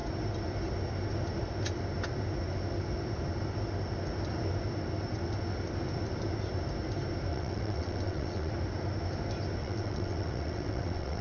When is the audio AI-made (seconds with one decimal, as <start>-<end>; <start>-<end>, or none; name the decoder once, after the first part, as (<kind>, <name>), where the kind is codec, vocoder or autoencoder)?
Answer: 7.3-8.5 (vocoder, WaveNeXt); 9.6-11.2

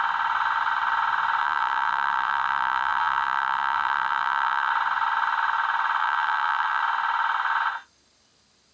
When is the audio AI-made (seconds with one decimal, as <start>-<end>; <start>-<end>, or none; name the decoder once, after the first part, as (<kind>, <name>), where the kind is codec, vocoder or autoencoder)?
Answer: 1.4-4.7 (vocoder, WaveNeXt); 6.0-6.8

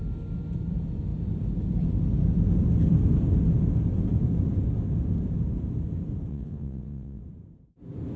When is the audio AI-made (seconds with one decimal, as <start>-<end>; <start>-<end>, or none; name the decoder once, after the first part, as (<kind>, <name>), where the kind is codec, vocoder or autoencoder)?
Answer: 6.3-7.2 (vocoder, WaveNeXt)

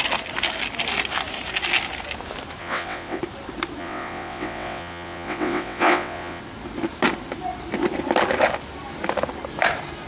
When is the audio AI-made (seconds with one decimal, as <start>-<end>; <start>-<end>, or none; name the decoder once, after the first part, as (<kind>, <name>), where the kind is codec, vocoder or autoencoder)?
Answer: 2.6-3.2 (vocoder, WaveNeXt); 3.8-6.4

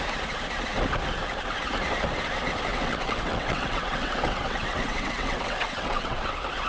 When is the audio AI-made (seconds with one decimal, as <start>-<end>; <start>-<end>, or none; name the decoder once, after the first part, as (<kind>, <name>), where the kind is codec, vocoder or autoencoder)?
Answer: 2.7-6.3 (vocoder, WaveNeXt)

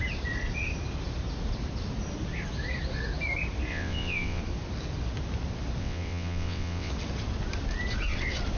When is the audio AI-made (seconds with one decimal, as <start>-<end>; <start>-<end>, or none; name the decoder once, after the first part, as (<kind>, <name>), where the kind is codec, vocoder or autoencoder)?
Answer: 3.7-4.4 (vocoder, WaveNeXt); 5.8-6.9

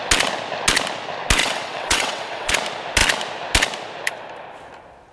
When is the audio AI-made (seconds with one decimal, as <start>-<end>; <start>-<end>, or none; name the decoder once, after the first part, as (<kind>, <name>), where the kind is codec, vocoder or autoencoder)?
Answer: 1.4-2.5 (vocoder, WaveNeXt)